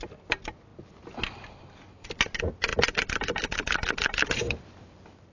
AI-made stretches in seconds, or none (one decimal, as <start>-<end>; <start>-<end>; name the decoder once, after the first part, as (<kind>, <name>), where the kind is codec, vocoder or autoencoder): 2.7-4.7 (vocoder, BigVGAN v2)